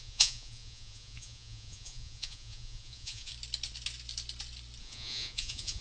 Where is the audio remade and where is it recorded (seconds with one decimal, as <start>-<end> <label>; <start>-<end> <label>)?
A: 0.0-3.3 remade; 3.3-4.8 recorded; 4.8-5.8 remade